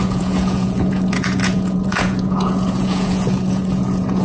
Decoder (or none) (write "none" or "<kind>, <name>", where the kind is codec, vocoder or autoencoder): vocoder, Vocos